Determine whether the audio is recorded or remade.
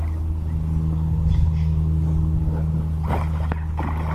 recorded